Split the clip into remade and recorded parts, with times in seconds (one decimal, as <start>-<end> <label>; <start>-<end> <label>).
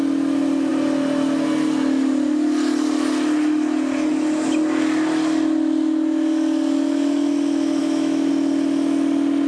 0.0-7.8 recorded; 7.8-8.3 remade; 8.3-9.5 recorded